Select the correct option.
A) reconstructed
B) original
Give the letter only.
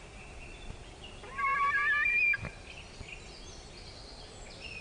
B